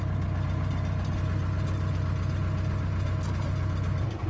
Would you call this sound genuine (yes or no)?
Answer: yes